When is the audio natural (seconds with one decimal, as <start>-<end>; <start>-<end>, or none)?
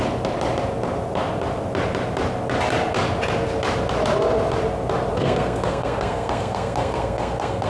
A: 0.0-5.1